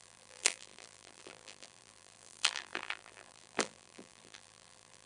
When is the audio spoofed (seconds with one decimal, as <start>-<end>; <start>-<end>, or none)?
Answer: 0.0-5.1